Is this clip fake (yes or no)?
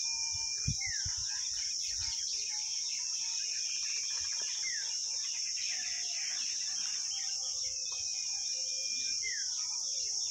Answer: no